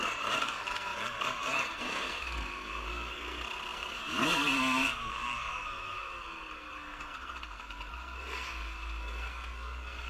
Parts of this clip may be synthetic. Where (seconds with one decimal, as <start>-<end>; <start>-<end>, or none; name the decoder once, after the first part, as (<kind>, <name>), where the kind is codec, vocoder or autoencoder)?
0.0-10.1 (codec, SNAC)